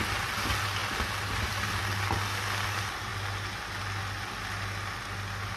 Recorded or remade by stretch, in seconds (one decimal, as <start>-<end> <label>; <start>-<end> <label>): 0.0-5.6 recorded